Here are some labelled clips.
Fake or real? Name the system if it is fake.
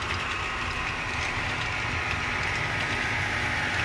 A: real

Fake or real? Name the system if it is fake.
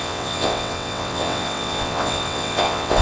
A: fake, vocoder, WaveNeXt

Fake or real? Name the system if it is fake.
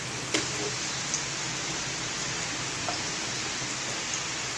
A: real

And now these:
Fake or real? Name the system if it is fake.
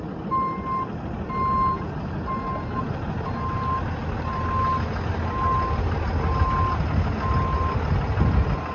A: real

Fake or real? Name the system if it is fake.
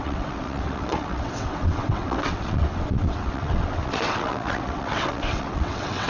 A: fake, vocoder, WaveNeXt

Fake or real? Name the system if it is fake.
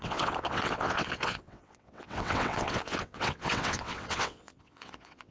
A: fake, vocoder, WaveNeXt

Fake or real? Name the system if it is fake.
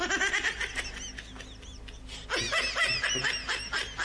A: real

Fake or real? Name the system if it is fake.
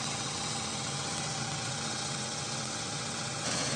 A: fake, vocoder, WaveNeXt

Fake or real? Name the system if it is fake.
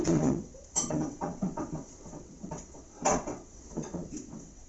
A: fake, vocoder, WaveNeXt